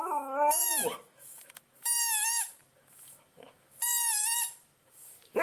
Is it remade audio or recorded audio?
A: remade